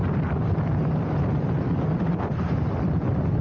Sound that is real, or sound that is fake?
real